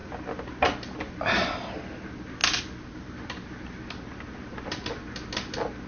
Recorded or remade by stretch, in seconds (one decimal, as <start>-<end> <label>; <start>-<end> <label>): 0.0-5.9 recorded